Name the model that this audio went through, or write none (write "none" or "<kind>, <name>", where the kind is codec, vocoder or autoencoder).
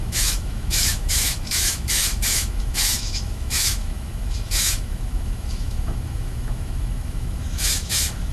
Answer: autoencoder, DAC-VAE